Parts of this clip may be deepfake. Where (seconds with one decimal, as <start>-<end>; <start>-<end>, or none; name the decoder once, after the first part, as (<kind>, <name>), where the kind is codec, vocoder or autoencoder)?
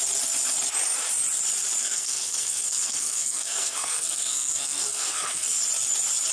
1.8-5.6 (codec, SNAC)